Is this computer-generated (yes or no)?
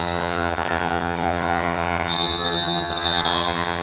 yes